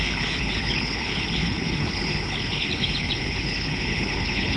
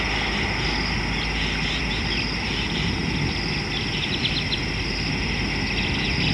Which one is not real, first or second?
first